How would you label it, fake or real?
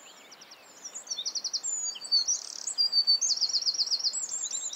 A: real